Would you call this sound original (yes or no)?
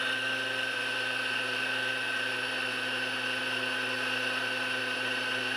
yes